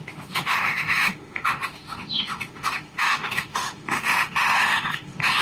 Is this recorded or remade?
remade